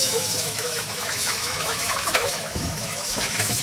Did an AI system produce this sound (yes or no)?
yes